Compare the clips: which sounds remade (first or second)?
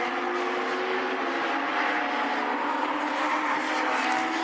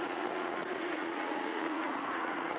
second